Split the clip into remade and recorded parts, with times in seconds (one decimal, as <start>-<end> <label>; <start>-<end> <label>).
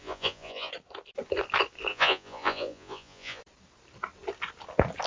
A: 0.0-0.7 remade; 0.7-1.9 recorded; 1.9-3.4 remade; 3.4-5.1 recorded